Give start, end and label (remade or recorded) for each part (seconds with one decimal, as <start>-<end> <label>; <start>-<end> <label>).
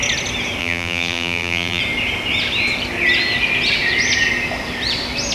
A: 0.0-0.6 recorded; 0.6-1.8 remade; 1.8-5.3 recorded